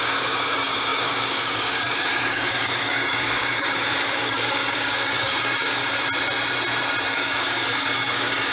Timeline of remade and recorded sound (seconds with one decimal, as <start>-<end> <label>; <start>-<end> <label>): 0.0-5.8 remade; 5.8-7.1 recorded; 7.1-8.5 remade